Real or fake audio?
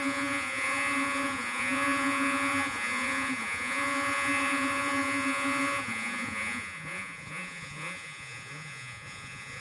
fake